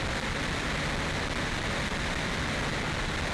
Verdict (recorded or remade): recorded